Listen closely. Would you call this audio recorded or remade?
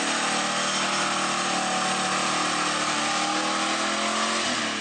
recorded